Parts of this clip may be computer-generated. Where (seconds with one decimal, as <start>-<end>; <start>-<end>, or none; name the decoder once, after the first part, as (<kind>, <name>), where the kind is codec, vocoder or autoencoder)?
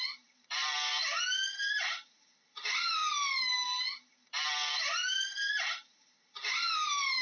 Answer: 0.0-0.9 (vocoder, BigVGAN v2); 1.6-3.0; 4.5-7.2